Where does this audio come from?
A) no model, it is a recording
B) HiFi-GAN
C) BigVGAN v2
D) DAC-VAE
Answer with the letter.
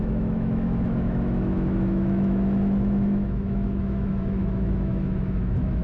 D